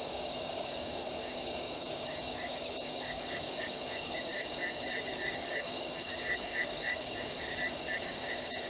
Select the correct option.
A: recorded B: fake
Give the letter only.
B